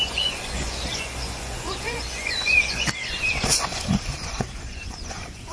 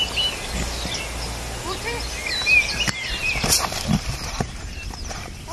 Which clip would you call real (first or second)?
second